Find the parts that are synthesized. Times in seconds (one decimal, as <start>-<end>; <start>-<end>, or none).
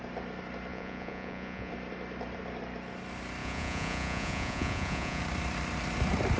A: 0.7-1.7; 3.4-5.2